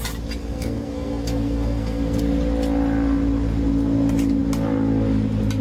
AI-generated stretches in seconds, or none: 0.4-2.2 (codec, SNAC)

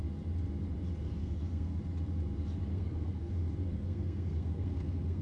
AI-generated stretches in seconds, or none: 1.2-1.8 (codec, SNAC); 2.7-3.3; 3.7-5.2

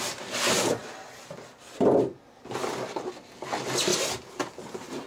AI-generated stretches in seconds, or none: none